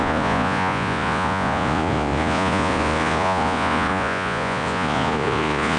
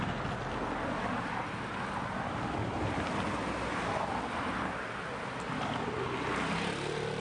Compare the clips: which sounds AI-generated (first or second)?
first